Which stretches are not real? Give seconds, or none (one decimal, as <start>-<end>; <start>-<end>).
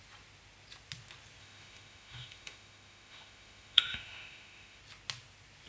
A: 1.4-4.8